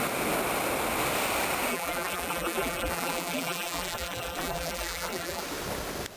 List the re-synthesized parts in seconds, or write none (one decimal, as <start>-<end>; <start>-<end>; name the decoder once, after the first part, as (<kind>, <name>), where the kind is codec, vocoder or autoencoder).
1.7-5.4 (vocoder, BigVGAN v2)